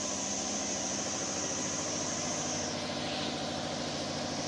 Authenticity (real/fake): real